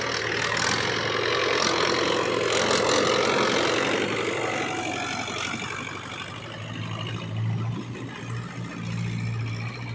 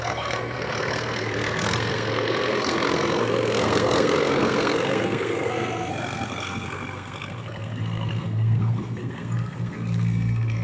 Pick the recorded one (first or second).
first